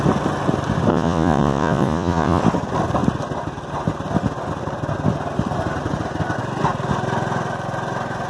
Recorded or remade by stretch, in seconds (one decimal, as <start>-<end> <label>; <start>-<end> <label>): 0.0-0.9 recorded; 0.9-2.4 remade; 2.4-8.3 recorded